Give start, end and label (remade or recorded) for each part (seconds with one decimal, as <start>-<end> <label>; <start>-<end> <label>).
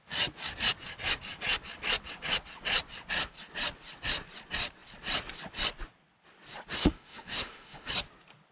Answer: 0.0-6.8 recorded; 6.8-7.9 remade; 7.9-8.5 recorded